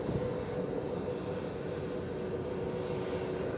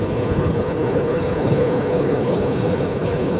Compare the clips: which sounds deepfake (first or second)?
second